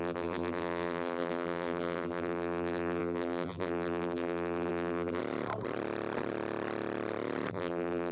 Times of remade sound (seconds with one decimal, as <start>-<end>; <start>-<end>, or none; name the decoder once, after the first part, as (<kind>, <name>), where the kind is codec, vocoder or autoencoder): 0.0-5.2 (vocoder, BigVGAN v2); 7.5-8.1